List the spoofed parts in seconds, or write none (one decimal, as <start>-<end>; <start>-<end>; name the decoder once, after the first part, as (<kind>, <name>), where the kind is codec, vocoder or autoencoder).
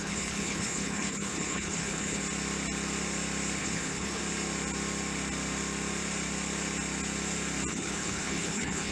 0.0-2.2 (codec, HILCodec); 3.6-4.2; 7.7-8.9